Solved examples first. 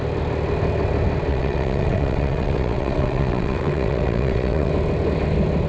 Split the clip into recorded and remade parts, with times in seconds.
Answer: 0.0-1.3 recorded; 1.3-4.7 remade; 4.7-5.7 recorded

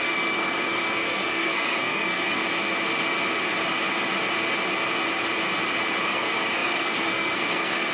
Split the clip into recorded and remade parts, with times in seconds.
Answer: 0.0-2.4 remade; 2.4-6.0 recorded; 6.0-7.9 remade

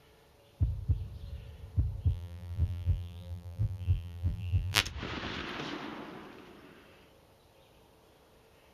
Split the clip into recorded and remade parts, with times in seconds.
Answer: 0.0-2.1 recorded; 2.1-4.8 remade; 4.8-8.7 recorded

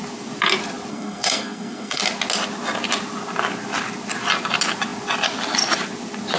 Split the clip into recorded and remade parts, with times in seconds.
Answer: 0.0-0.9 recorded; 0.9-2.0 remade; 2.0-6.4 recorded